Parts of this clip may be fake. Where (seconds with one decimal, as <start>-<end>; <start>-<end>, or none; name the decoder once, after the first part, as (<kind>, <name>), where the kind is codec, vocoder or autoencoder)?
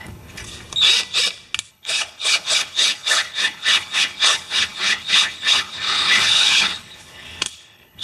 0.0-0.4 (codec, HILCodec); 1.7-8.0